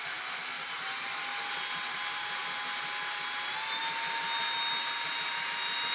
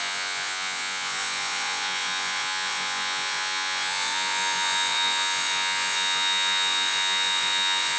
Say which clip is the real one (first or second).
first